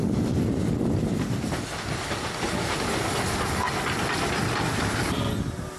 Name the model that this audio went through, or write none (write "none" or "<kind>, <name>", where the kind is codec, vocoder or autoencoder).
none